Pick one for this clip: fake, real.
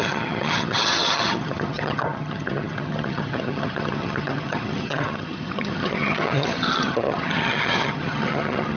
fake